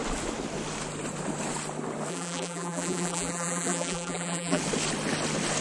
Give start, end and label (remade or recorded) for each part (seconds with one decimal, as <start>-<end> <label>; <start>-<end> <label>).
0.0-2.1 recorded; 2.1-4.6 remade; 4.6-5.6 recorded

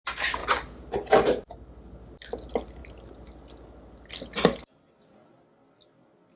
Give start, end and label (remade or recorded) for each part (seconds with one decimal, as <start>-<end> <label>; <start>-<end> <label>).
0.0-0.4 recorded; 0.4-1.5 remade; 1.5-6.4 recorded

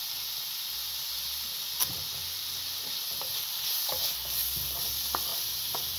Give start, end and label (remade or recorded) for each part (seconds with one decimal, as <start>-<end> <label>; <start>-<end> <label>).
0.0-2.2 recorded; 2.2-2.9 remade; 2.9-5.3 recorded; 5.3-6.0 remade

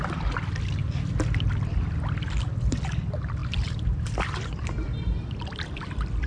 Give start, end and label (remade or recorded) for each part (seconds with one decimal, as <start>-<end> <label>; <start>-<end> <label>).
0.0-6.3 recorded